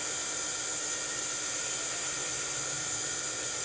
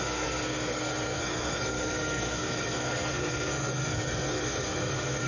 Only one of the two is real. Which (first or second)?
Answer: first